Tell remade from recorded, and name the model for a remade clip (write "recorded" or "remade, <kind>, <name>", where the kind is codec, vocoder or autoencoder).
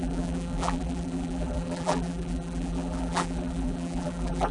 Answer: remade, vocoder, BigVGAN v2